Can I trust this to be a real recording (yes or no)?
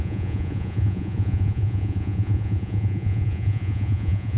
no